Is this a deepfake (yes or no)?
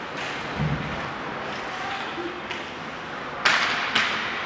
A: no